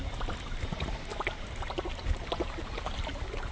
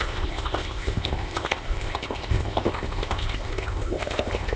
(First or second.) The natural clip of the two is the first